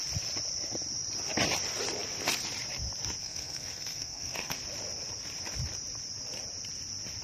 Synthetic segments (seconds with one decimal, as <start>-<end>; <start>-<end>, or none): 3.2-4.6